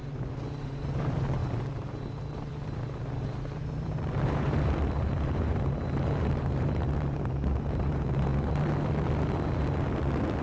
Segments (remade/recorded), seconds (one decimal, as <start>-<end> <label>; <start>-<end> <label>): 0.0-8.3 remade; 8.3-10.4 recorded